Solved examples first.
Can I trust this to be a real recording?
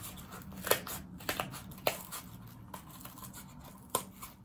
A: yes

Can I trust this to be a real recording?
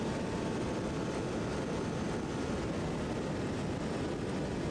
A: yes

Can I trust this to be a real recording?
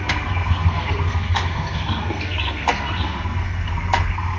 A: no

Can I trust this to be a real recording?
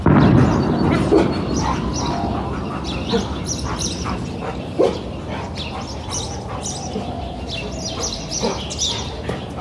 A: yes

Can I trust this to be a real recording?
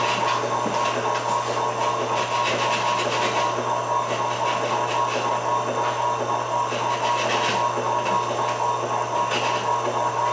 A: yes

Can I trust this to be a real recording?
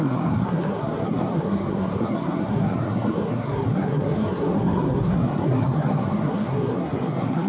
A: no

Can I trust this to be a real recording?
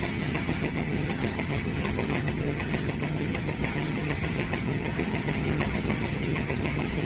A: no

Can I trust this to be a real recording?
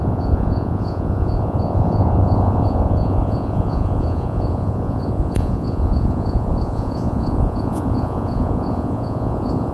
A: no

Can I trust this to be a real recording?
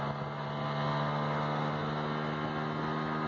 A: yes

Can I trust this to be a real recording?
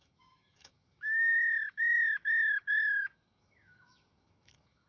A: no